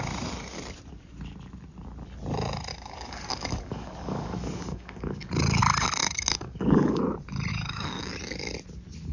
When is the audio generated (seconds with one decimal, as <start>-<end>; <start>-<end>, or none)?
2.7-5.6; 6.0-7.0; 7.5-8.1